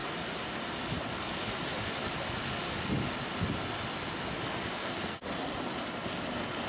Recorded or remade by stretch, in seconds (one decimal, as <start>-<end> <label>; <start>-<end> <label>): 0.0-4.8 recorded; 4.8-5.3 remade; 5.3-6.7 recorded